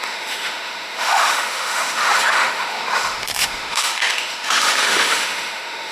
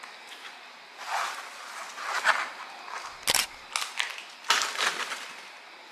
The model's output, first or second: first